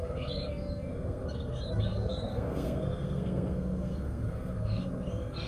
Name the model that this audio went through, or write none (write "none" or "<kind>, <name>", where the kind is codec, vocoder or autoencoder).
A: codec, SNAC